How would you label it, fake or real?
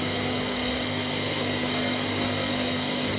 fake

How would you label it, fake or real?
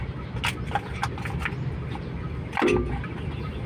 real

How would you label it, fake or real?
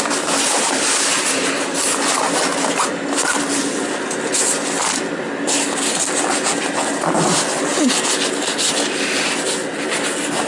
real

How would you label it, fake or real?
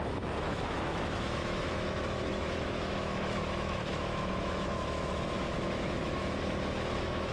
fake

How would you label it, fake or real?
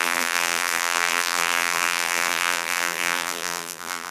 fake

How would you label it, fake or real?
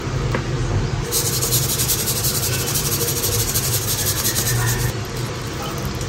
real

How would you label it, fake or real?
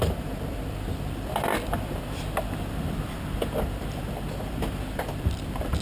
fake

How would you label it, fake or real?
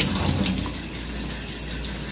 real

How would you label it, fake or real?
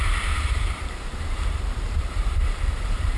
fake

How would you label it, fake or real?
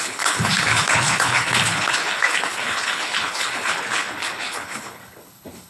fake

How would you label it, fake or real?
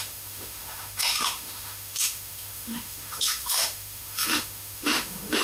fake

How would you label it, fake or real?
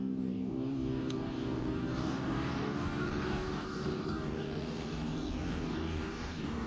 fake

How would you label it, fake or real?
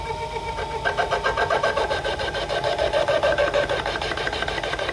real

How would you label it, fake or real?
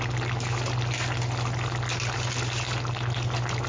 real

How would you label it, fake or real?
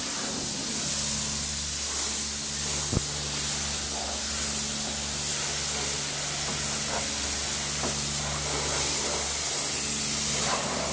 real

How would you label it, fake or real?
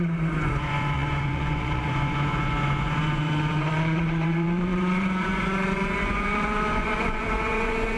fake